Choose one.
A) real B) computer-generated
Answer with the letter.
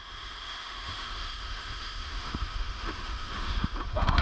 B